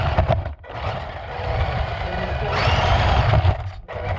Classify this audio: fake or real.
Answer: fake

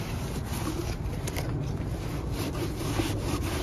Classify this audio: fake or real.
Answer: real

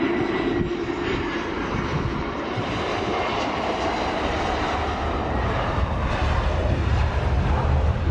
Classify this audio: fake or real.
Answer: fake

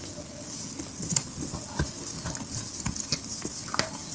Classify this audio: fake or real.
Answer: real